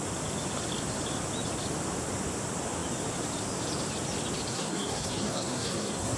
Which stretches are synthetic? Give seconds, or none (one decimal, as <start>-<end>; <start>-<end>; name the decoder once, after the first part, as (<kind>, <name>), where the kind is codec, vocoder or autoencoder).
4.5-6.2 (codec, SNAC)